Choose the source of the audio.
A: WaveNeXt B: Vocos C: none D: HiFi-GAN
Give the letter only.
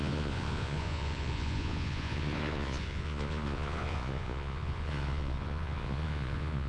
B